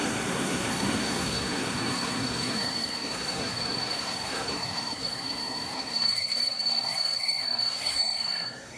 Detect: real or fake fake